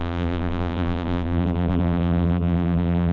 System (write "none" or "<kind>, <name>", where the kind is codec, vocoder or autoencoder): vocoder, BigVGAN v2